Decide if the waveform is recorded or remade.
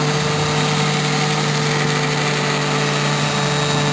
recorded